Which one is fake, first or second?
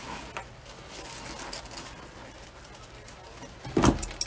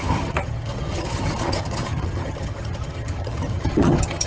second